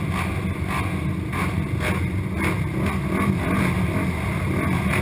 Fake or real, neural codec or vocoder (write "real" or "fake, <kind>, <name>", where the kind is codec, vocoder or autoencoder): real